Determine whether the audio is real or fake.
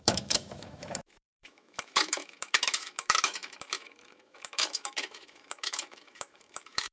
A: fake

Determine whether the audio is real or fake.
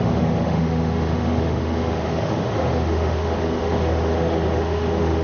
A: fake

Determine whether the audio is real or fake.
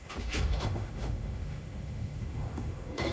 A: fake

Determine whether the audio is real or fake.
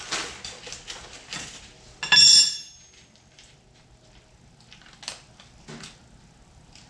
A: real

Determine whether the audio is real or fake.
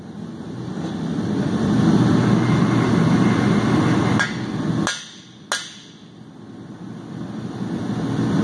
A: real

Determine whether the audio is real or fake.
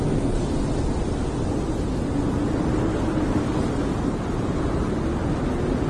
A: real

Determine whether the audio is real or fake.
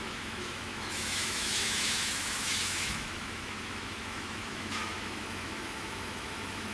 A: fake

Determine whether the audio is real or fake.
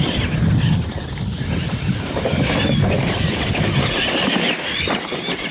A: real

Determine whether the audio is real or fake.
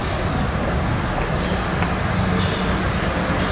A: real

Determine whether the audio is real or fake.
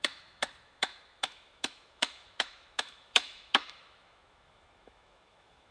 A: fake